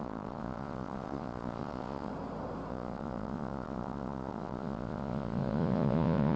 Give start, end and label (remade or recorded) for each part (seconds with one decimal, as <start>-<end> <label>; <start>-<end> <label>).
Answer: 0.0-2.1 remade; 2.1-2.7 recorded; 2.7-6.4 remade